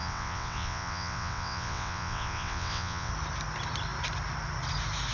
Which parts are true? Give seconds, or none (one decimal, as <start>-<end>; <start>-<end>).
3.1-5.1